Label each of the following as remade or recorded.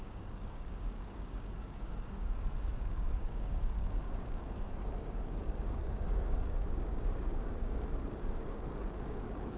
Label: remade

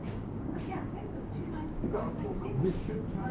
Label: remade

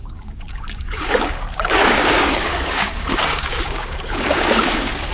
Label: remade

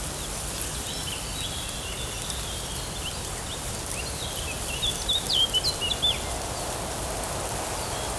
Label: recorded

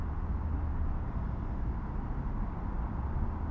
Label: recorded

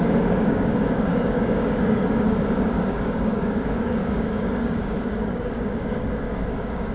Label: remade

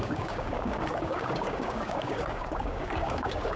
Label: remade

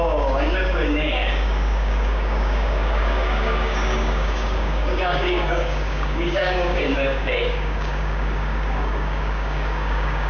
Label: remade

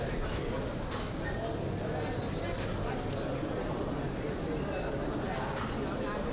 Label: recorded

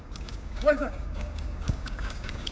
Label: remade